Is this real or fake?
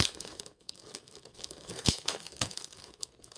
fake